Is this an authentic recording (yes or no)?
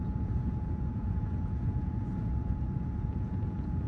no